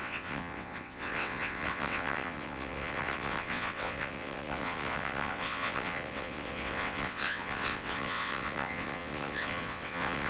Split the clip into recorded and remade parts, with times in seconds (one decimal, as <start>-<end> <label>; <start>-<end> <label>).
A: 0.0-10.3 remade